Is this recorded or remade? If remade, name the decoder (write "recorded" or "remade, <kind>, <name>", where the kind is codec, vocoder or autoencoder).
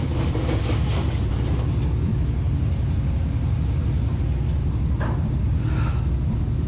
recorded